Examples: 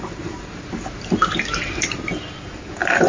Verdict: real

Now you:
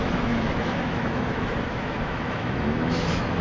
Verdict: fake